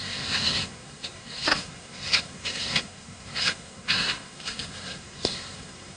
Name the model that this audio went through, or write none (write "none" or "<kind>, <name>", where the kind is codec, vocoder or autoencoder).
codec, SNAC